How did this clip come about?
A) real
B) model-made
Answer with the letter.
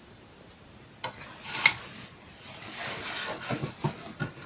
A